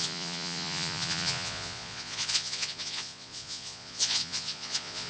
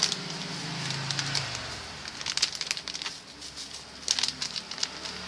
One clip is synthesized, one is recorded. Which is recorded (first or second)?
second